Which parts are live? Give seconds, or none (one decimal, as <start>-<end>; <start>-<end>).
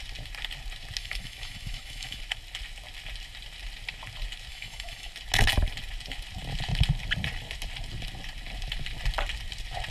0.0-1.0; 2.2-4.5; 5.1-9.9